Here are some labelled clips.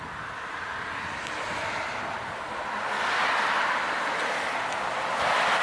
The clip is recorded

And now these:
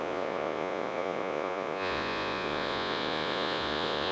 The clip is remade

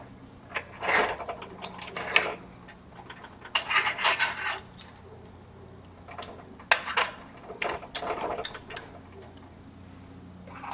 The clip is recorded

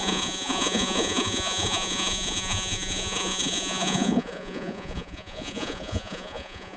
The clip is remade